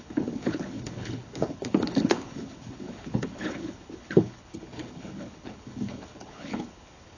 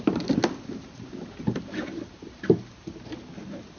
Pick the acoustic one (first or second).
second